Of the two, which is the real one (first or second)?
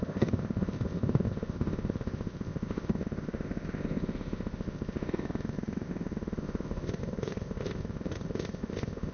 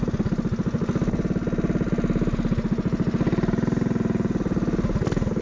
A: second